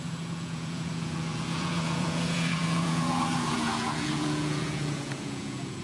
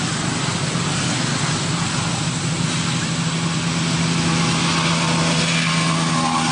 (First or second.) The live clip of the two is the second